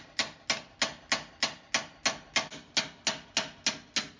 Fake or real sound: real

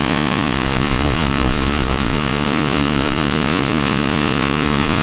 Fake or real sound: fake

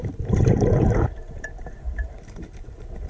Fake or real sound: fake